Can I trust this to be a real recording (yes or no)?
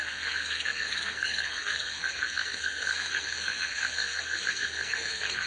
no